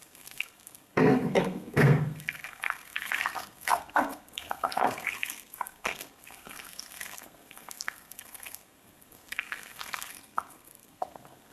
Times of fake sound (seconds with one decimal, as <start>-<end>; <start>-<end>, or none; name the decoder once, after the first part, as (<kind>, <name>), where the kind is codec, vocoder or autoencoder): 0.0-11.5 (codec, SNAC)